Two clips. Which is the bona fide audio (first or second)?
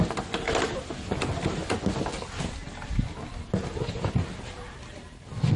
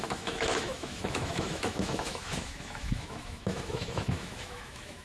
first